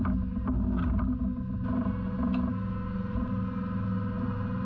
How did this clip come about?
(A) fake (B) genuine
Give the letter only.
B